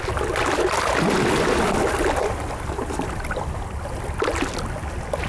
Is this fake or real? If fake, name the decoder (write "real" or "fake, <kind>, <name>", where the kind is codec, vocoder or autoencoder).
real